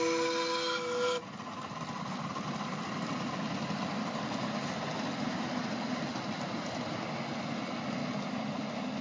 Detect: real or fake real